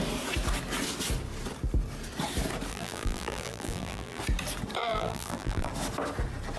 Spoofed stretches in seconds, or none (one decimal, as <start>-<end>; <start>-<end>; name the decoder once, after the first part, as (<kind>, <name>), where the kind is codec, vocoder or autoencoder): 2.7-4.2 (vocoder, BigVGAN v2); 4.8-5.7